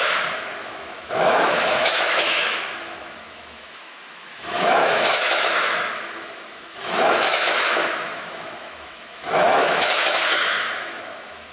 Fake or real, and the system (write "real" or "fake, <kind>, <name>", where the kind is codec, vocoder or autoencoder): fake, autoencoder, DAC-VAE